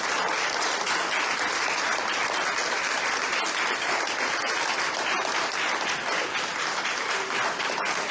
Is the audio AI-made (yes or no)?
no